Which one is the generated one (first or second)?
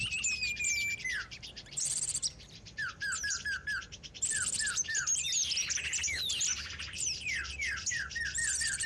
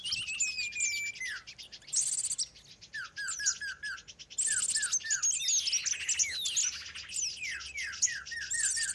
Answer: first